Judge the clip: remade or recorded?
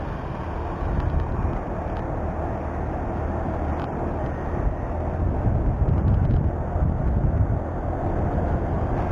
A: recorded